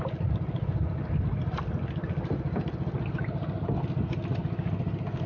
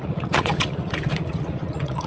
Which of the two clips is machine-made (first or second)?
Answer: second